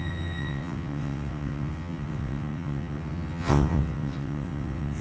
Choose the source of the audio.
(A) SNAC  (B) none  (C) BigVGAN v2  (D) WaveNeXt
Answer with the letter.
D